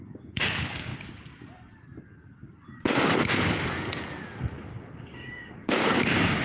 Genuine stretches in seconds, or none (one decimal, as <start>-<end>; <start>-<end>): 0.9-4.7